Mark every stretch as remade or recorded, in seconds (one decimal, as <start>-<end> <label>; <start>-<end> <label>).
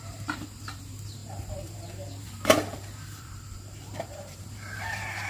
0.0-5.3 remade